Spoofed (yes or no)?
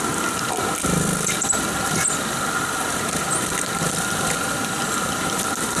no